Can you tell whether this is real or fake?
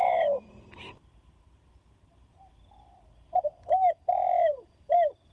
fake